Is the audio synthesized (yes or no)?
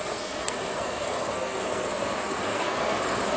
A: yes